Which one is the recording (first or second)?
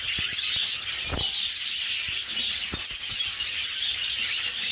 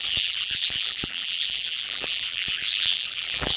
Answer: first